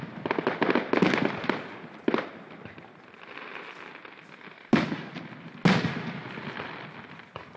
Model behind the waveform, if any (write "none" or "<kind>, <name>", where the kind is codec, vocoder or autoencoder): none